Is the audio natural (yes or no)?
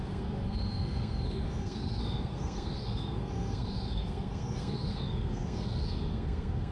no